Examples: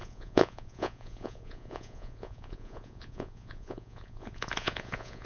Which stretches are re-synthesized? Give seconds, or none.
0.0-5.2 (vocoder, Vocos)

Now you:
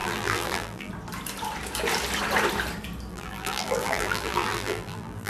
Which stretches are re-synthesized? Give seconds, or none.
0.0-0.9 (vocoder, BigVGAN v2); 3.1-5.3

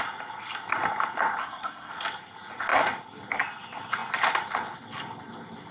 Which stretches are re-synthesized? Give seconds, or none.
1.4-1.9 (codec, SNAC)

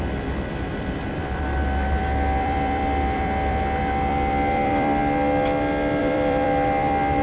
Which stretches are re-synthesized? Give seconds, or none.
0.0-5.0 (vocoder, BigVGAN v2); 6.0-7.2